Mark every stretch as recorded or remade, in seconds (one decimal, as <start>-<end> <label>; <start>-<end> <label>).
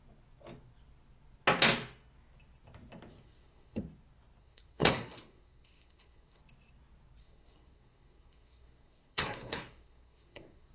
0.0-3.1 recorded; 3.1-3.8 remade; 3.8-4.4 recorded; 4.4-6.4 remade; 6.4-7.2 recorded; 7.2-10.7 remade